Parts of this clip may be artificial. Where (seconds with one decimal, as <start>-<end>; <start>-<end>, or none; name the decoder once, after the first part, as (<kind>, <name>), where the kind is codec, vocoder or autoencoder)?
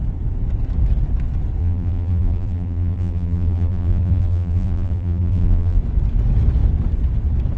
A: 1.6-5.8 (vocoder, BigVGAN v2)